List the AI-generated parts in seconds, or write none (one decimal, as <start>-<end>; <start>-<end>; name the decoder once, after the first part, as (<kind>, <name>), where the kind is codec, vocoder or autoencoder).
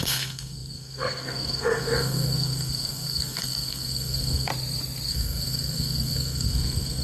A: 0.0-4.5 (codec, SNAC); 5.1-7.0